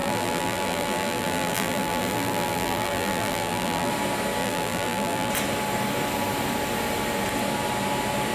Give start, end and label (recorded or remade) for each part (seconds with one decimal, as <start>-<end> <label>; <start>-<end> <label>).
0.0-3.9 remade; 3.9-4.4 recorded; 4.4-5.3 remade; 5.3-8.3 recorded